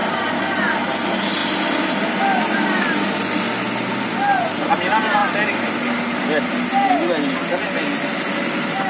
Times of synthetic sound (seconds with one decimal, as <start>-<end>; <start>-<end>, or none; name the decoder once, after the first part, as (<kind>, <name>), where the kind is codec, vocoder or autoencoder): 0.0-0.8 (vocoder, BigVGAN v2)